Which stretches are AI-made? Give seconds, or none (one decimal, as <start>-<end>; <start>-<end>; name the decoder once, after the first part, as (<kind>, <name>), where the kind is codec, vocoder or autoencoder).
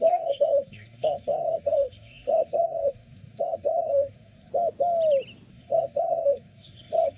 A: 0.0-4.5 (codec, SNAC); 5.5-7.2